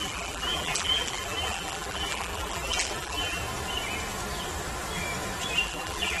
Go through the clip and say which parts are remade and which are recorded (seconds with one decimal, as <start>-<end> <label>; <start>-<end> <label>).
0.0-3.4 remade; 3.4-5.5 recorded; 5.5-6.2 remade